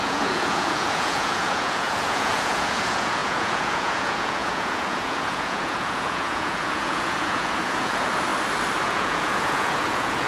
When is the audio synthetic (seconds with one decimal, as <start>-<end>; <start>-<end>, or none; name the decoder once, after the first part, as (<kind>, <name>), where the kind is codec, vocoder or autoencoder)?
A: 0.0-8.3 (vocoder, Vocos); 8.8-10.3